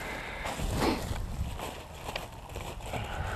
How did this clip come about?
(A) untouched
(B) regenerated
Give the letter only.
A